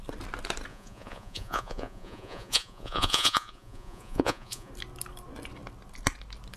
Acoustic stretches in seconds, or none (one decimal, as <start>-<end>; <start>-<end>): 0.0-0.7; 4.7-6.6